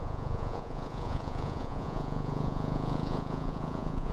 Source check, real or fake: fake